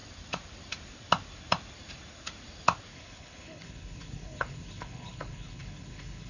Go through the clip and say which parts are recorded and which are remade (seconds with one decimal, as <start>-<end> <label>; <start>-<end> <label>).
0.0-2.9 recorded; 2.9-6.3 remade